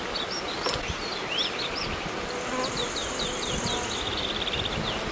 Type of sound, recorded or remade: recorded